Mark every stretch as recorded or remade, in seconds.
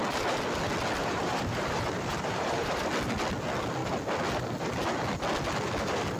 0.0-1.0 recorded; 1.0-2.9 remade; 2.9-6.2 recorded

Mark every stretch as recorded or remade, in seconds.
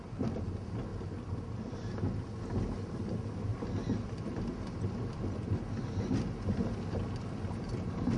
0.0-0.9 recorded; 0.9-2.2 remade; 2.2-3.5 recorded; 3.5-8.2 remade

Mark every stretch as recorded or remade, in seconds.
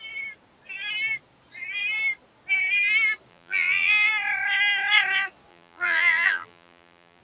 0.0-3.3 recorded; 3.3-4.1 remade; 4.1-5.5 recorded; 5.5-7.2 remade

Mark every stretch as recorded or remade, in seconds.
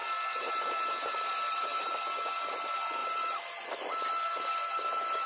0.0-1.9 remade; 1.9-5.3 recorded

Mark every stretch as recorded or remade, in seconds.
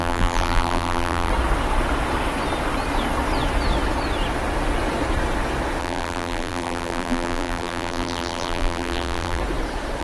0.0-1.3 remade; 1.3-5.8 recorded; 5.8-9.4 remade; 9.4-10.0 recorded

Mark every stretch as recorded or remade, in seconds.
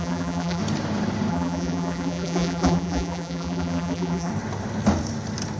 0.0-0.6 remade; 0.6-1.3 recorded; 1.3-4.3 remade; 4.3-5.6 recorded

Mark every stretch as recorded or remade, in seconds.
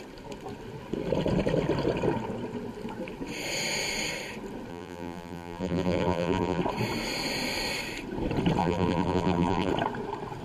0.0-4.7 recorded; 4.7-6.6 remade; 6.6-8.6 recorded; 8.6-9.7 remade; 9.7-10.4 recorded